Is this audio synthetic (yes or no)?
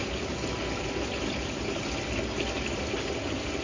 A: no